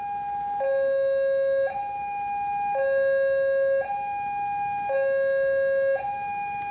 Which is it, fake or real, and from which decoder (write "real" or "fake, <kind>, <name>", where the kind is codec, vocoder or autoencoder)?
real